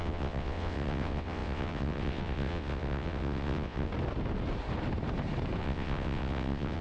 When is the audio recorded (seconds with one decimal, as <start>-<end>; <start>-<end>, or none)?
3.9-5.6